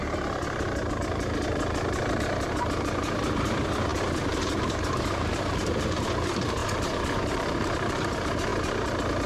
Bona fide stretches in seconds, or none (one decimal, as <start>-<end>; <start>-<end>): none